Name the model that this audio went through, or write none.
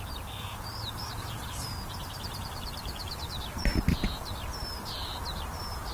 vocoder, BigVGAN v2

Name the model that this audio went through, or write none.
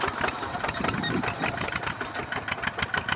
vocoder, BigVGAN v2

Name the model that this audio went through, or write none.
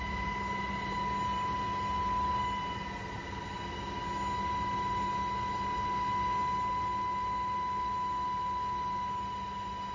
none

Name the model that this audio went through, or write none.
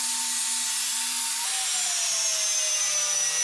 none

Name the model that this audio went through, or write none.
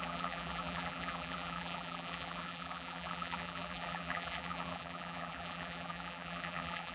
vocoder, BigVGAN v2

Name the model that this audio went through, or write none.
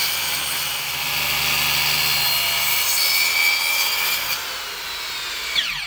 none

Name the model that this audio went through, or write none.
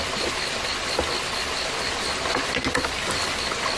none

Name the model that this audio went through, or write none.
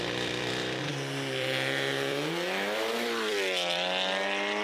vocoder, BigVGAN v2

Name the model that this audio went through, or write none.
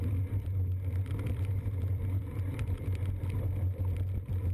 vocoder, BigVGAN v2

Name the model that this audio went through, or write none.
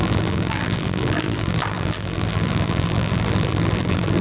vocoder, BigVGAN v2